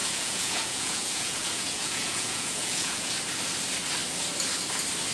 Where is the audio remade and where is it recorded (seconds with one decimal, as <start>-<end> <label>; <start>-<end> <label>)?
0.0-3.1 remade; 3.1-5.1 recorded